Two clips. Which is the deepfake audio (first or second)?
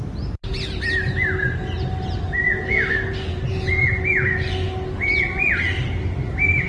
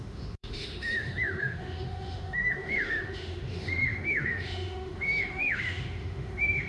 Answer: second